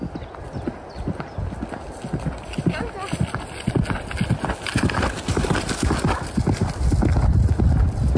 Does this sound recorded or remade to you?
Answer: recorded